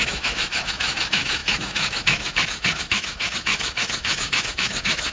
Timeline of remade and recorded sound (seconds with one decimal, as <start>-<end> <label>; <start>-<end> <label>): 0.0-5.1 remade